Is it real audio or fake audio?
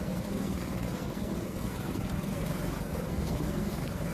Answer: fake